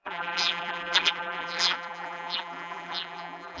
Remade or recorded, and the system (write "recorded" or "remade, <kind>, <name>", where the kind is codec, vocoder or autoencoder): remade, vocoder, BigVGAN v2